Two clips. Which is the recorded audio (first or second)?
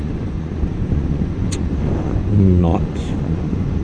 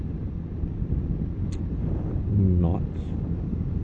second